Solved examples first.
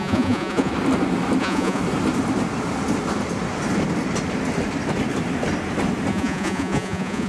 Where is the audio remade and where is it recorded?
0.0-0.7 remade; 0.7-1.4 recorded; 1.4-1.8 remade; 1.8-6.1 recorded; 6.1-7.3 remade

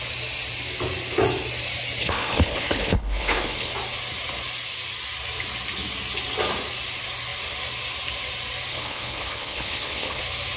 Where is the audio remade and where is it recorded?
0.0-2.0 recorded; 2.0-3.7 remade; 3.7-8.7 recorded; 8.7-10.2 remade; 10.2-10.6 recorded

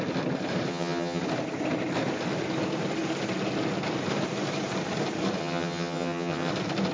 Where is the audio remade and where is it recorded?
0.0-0.7 recorded; 0.7-1.2 remade; 1.2-5.4 recorded; 5.4-6.5 remade; 6.5-6.9 recorded

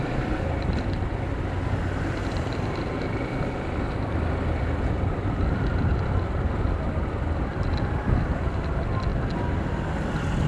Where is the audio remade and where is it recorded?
0.0-10.5 recorded

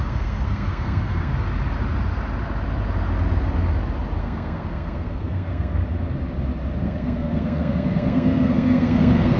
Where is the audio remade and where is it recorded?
0.0-1.3 remade; 1.3-4.2 recorded; 4.2-5.8 remade; 5.8-6.8 recorded; 6.8-9.4 remade

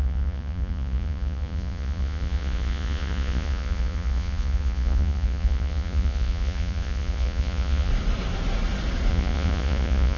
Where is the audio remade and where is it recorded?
0.0-7.9 remade; 7.9-9.1 recorded; 9.1-10.2 remade

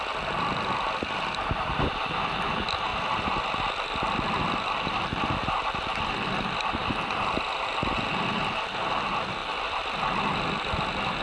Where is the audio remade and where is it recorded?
0.0-11.2 recorded